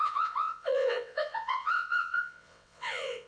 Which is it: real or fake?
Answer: fake